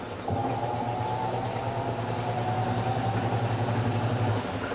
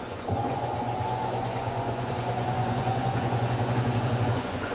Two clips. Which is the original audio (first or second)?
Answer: first